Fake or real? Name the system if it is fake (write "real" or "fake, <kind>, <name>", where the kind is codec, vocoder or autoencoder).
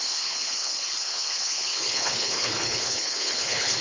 fake, codec, HILCodec